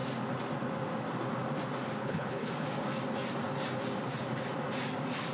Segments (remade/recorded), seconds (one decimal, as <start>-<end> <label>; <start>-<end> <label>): 0.0-2.0 recorded; 2.0-2.5 remade; 2.5-5.3 recorded